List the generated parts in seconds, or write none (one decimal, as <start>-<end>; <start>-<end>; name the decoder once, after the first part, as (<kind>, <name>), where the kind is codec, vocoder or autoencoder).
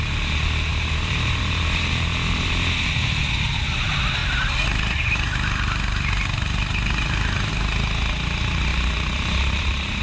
0.7-1.9 (vocoder, BigVGAN v2); 8.7-10.0